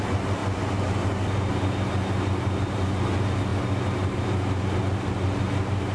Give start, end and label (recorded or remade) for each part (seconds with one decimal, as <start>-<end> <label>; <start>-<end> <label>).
0.0-5.9 recorded